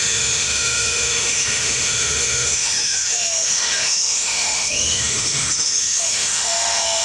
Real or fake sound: fake